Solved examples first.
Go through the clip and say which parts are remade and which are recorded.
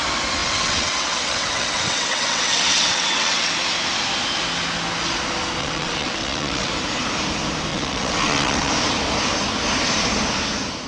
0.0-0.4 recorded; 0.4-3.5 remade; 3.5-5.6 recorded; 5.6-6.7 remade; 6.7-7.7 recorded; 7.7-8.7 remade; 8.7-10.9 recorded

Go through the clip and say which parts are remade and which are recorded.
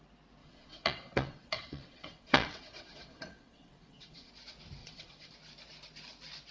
0.0-0.4 recorded; 0.4-4.3 remade; 4.3-4.8 recorded; 4.8-5.3 remade; 5.3-6.5 recorded